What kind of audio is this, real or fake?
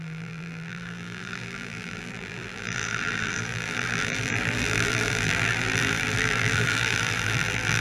fake